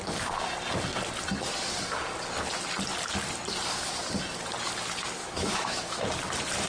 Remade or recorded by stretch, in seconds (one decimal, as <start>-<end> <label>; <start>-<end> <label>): 0.0-5.2 recorded; 5.2-6.1 remade; 6.1-6.7 recorded